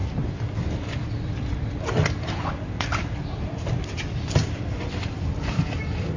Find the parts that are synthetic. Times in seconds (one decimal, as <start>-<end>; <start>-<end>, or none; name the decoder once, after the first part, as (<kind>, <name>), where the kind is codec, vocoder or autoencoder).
none

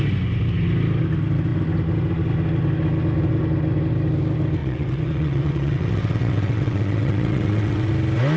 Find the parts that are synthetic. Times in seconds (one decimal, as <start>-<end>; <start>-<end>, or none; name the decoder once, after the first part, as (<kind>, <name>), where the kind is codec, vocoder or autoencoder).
4.6-7.9 (vocoder, WaveNeXt)